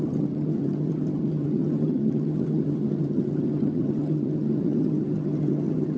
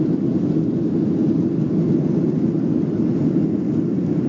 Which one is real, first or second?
second